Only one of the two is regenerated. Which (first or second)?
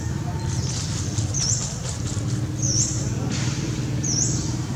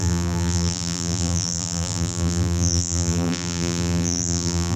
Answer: second